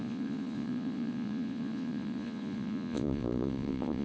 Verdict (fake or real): fake